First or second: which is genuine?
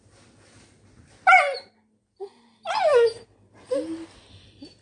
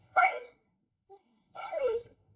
first